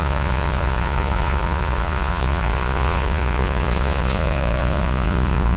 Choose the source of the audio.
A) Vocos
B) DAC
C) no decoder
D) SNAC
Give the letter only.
A